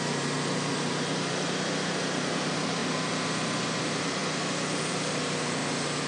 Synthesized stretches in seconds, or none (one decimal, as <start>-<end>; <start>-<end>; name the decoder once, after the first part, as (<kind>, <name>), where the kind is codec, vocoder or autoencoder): 0.0-2.8 (vocoder, BigVGAN v2); 3.8-4.2; 4.9-5.6